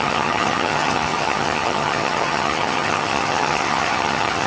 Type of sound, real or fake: fake